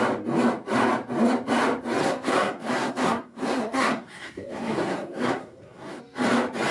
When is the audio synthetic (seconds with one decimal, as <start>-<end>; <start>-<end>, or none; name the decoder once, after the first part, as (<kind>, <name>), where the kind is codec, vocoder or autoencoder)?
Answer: 2.0-6.0 (codec, SNAC)